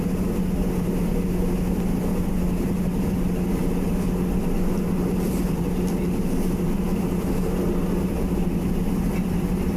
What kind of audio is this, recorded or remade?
recorded